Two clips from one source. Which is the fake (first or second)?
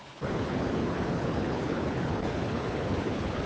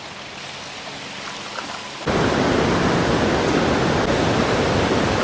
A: first